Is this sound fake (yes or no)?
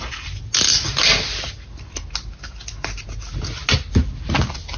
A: no